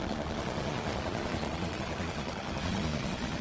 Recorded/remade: remade